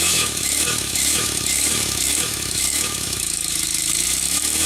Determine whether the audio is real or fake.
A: fake